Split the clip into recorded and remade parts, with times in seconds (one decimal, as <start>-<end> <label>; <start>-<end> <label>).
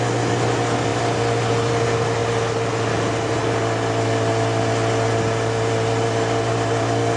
0.0-7.2 recorded